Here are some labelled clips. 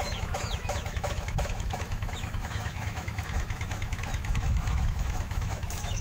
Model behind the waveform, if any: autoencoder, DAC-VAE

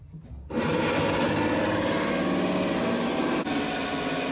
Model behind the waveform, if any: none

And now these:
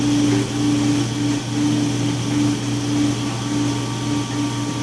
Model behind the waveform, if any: none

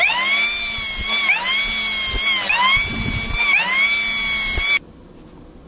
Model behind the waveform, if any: none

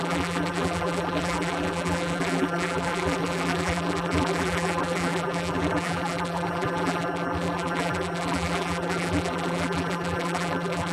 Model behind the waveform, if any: vocoder, BigVGAN v2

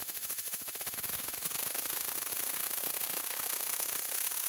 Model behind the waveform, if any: autoencoder, DAC-VAE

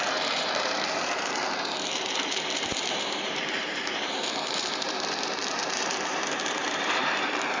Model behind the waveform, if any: vocoder, BigVGAN v2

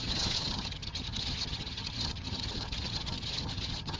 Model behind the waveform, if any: vocoder, HiFi-GAN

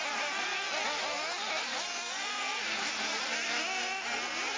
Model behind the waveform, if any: none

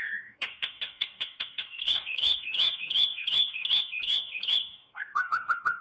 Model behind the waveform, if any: codec, DAC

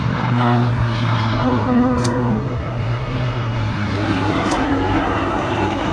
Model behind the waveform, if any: codec, SNAC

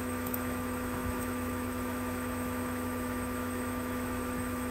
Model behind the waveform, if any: autoencoder, DAC-VAE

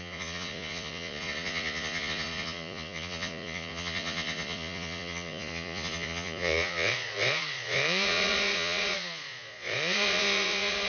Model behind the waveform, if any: vocoder, Vocos